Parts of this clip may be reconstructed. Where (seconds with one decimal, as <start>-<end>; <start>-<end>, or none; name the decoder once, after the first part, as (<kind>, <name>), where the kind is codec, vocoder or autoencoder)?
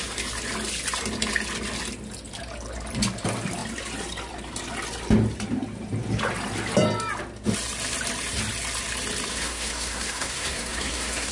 9.3-11.3 (codec, SNAC)